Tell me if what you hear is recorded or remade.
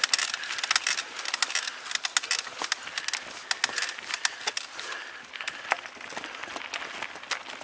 recorded